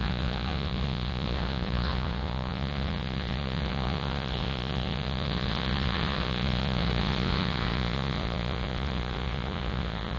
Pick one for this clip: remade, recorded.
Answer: remade